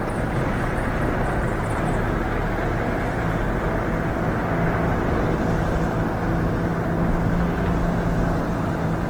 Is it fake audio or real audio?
real